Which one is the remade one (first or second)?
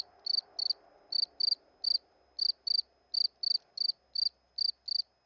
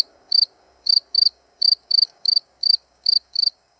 second